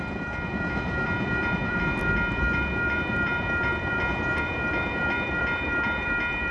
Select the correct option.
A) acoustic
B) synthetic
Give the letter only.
B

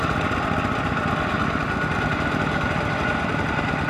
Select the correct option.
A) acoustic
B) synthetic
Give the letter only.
A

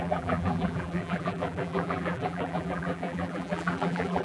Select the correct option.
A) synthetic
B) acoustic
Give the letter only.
A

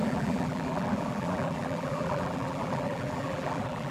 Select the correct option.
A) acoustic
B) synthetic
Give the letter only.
B